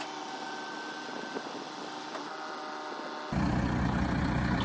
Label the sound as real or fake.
real